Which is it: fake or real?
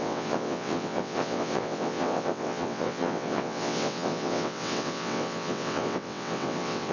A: fake